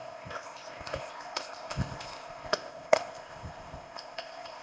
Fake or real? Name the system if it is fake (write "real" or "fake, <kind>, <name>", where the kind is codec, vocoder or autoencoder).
fake, codec, ZipCodec